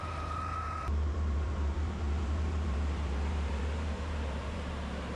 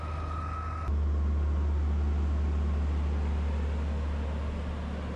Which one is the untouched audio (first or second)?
second